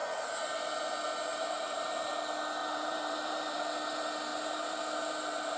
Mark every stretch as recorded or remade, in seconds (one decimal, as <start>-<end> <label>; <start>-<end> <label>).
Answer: 0.0-1.3 recorded; 1.3-2.1 remade; 2.1-2.6 recorded; 2.6-3.6 remade; 3.6-4.3 recorded; 4.3-5.6 remade